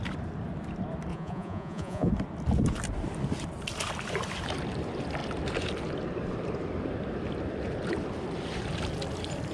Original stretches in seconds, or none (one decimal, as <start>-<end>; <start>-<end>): 0.0-1.1; 2.1-9.5

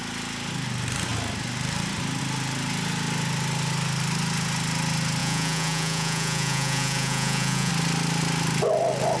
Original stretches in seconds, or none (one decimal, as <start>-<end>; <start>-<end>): 0.0-5.2; 7.7-9.2